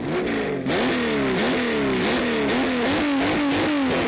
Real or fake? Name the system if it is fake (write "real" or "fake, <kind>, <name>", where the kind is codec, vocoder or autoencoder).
real